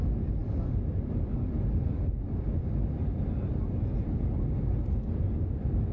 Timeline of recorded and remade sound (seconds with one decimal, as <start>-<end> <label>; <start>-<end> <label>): 0.0-5.9 recorded